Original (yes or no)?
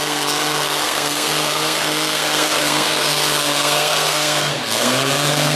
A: no